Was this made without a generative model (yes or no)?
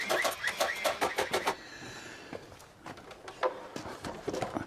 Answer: yes